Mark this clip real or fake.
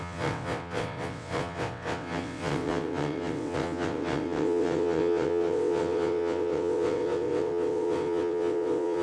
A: fake